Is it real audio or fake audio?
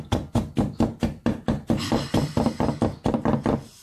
real